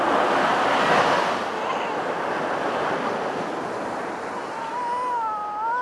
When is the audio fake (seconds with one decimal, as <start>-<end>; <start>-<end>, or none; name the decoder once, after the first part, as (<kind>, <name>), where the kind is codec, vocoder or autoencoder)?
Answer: none